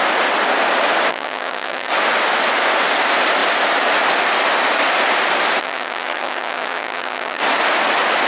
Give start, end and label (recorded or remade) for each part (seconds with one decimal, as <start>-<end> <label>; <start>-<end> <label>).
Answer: 0.0-1.1 recorded; 1.1-1.9 remade; 1.9-5.6 recorded; 5.6-7.4 remade; 7.4-8.3 recorded